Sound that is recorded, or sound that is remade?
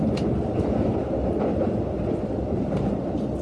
recorded